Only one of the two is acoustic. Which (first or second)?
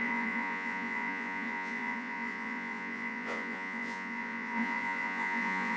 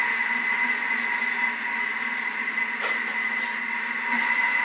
second